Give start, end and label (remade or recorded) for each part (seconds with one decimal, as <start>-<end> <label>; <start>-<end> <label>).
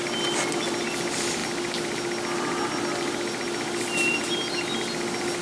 0.0-5.4 recorded